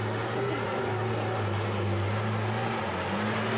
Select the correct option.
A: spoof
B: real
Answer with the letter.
B